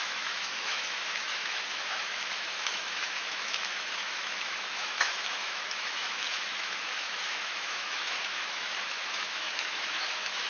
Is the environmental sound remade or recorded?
remade